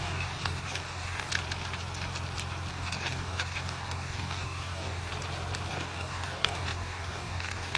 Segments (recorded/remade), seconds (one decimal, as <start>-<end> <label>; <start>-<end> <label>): 0.0-1.3 remade; 1.3-2.7 recorded; 2.7-5.1 remade; 5.1-5.7 recorded; 5.7-7.8 remade